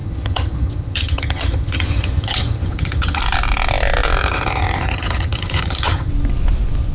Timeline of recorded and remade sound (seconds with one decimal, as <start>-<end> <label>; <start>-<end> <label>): 0.0-3.2 remade; 3.2-4.2 recorded; 4.2-6.1 remade; 6.1-6.9 recorded